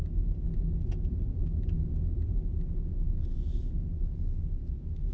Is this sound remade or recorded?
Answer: recorded